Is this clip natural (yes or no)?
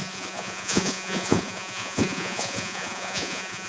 no